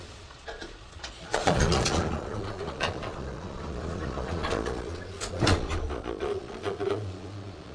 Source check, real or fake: fake